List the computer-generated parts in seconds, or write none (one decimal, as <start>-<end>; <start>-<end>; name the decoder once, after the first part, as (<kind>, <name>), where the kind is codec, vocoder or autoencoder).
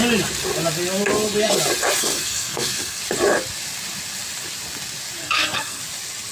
2.0-3.0 (codec, SNAC); 5.2-5.8